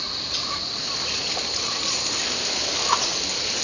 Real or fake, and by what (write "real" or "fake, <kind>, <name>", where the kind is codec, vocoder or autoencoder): real